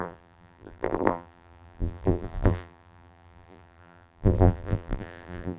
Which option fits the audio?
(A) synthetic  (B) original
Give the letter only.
A